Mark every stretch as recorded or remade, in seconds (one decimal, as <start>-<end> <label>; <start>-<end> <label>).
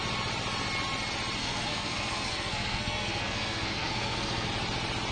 0.0-1.4 recorded; 1.4-4.5 remade; 4.5-5.1 recorded